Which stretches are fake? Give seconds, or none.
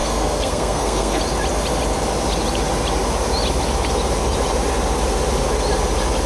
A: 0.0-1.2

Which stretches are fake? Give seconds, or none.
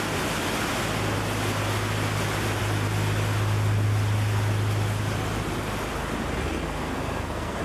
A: 6.4-7.6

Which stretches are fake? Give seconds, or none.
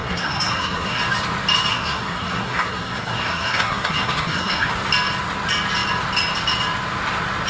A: 0.0-1.0; 1.7-4.7